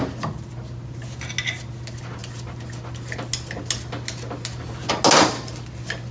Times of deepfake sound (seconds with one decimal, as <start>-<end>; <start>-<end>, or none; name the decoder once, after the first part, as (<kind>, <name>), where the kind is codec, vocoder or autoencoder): none